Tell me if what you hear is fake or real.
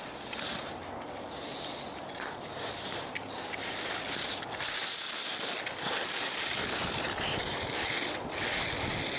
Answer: real